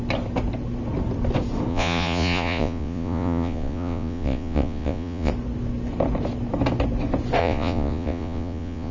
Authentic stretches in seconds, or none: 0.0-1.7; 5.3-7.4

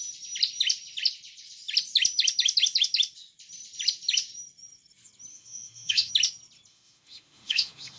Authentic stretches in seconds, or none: 0.0-5.3; 6.1-6.7

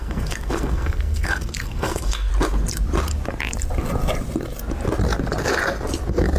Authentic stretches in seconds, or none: 2.3-6.4

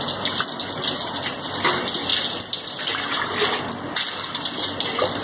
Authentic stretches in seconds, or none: 0.0-5.2

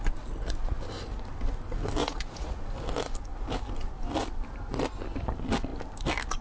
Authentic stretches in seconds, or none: 0.0-2.0; 2.6-6.4

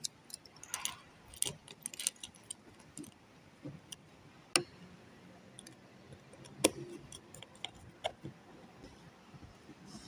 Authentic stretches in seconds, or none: 0.0-10.1

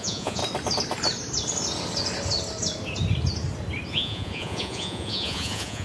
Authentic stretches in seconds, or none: 0.4-3.9